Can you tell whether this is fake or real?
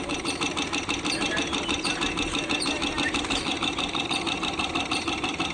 fake